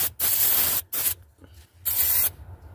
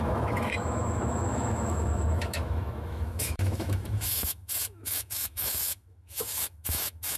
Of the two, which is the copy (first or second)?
second